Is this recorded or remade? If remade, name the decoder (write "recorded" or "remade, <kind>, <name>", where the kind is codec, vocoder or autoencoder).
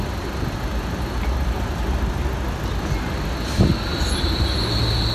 recorded